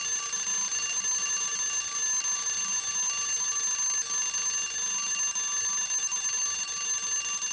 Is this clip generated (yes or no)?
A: no